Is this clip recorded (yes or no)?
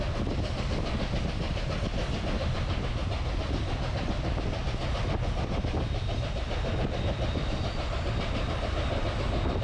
yes